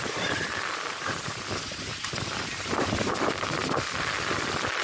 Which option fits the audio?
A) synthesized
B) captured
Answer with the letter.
B